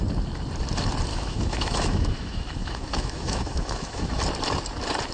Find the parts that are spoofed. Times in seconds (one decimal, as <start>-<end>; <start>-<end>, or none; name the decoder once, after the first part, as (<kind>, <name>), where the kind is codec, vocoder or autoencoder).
1.1-4.2 (autoencoder, DAC-VAE)